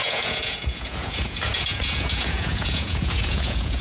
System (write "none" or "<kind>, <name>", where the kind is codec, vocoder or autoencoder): vocoder, Vocos